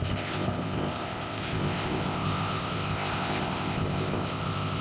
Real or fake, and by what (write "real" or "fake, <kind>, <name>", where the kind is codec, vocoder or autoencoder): fake, codec, ZipCodec